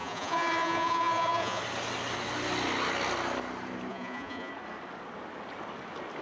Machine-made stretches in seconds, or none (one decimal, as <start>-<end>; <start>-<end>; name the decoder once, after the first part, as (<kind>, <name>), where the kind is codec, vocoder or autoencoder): 0.0-1.6 (vocoder, Vocos); 3.9-4.5